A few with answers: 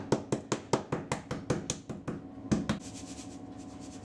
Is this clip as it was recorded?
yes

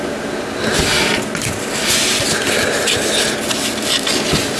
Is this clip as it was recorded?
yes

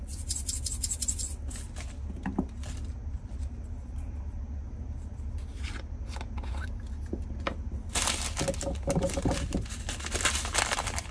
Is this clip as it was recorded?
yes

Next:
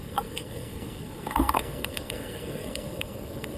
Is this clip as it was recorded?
no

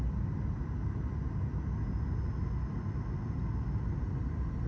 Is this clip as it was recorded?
yes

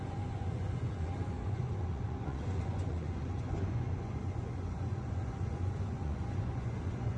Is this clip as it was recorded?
no